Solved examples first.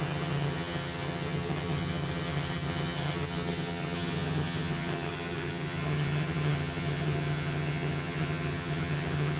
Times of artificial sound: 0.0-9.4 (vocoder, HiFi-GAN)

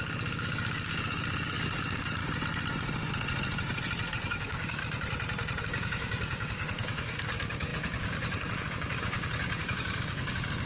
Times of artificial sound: 0.0-2.2 (codec, DAC); 4.1-4.8; 5.6-10.7

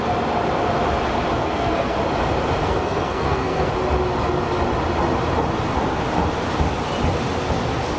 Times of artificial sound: 1.4-2.0 (codec, SNAC); 2.6-3.7

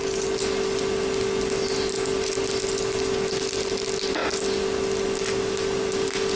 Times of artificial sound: none

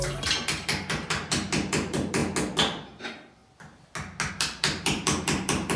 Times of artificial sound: 0.0-2.2 (vocoder, BigVGAN v2); 3.0-3.4; 4.3-5.8

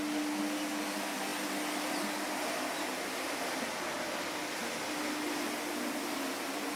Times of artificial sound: none

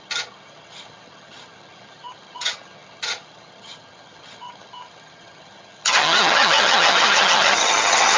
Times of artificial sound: 0.0-8.2 (vocoder, HiFi-GAN)